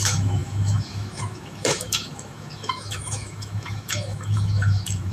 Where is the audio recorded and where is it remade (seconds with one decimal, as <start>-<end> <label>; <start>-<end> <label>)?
0.0-5.1 remade